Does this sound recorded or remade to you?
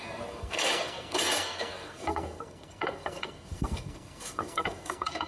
remade